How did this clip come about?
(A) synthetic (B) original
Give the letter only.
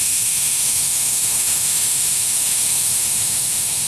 A